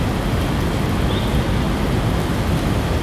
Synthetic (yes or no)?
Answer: no